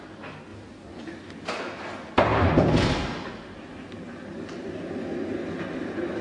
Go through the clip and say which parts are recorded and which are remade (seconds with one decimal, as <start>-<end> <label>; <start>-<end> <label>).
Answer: 0.0-6.2 recorded